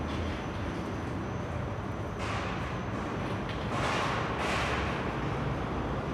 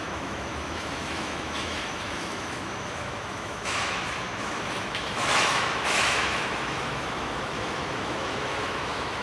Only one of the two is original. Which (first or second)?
first